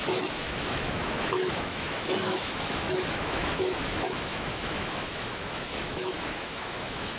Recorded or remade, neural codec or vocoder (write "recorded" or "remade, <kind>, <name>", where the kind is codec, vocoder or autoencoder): remade, autoencoder, DAC-VAE